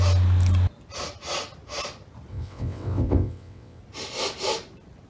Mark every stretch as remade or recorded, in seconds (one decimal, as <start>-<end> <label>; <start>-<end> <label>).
0.0-2.3 recorded; 2.3-3.8 remade; 3.8-5.1 recorded